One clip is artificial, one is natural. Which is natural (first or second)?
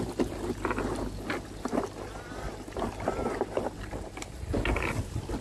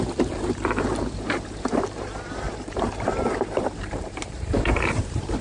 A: first